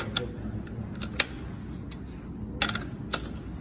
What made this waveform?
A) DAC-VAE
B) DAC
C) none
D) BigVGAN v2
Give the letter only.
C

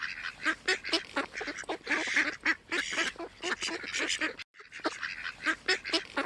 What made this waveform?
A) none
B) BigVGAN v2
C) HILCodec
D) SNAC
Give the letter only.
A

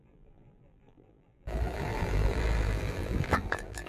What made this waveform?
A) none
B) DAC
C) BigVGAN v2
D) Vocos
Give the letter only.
C